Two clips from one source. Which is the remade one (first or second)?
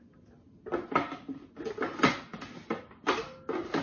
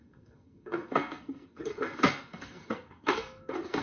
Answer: second